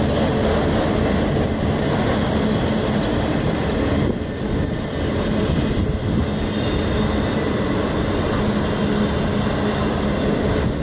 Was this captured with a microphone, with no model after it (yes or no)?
yes